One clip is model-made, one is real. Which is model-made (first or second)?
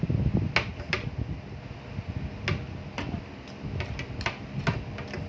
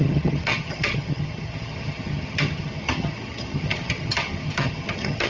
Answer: second